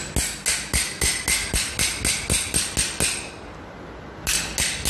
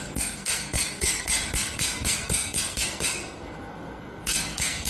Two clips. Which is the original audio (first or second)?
first